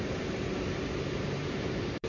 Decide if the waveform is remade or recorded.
remade